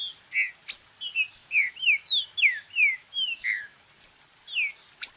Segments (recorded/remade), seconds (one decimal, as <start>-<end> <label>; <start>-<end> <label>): 0.0-1.4 recorded; 1.4-2.2 remade; 2.2-3.0 recorded; 3.0-3.8 remade; 3.8-5.2 recorded